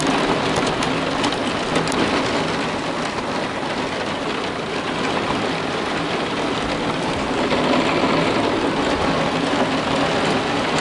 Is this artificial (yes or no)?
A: no